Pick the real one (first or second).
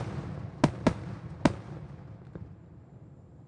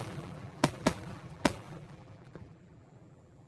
first